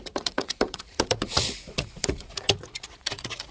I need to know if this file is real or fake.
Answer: fake